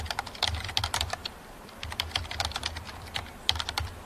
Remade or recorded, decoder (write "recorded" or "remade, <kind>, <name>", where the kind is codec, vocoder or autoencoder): remade, vocoder, BigVGAN v2